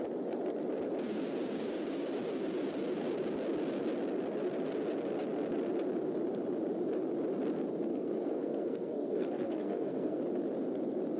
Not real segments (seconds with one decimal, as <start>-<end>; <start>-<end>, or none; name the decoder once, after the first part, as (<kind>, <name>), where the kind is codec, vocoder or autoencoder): 7.9-10.2 (codec, SNAC)